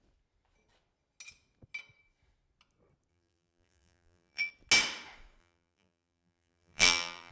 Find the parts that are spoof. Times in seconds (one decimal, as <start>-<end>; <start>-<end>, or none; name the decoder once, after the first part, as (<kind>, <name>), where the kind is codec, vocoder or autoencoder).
3.1-4.5 (vocoder, BigVGAN v2); 5.4-7.3